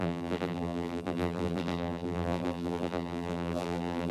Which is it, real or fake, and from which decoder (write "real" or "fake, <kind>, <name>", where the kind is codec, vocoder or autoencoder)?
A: fake, vocoder, BigVGAN v2